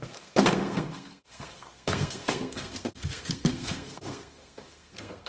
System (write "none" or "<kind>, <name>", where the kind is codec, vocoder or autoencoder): codec, SNAC